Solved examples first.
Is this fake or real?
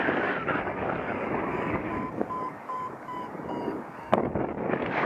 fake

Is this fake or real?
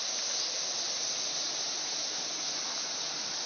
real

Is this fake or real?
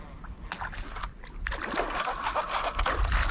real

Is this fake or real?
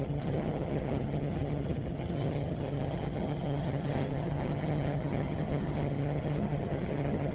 fake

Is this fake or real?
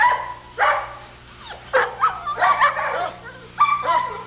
real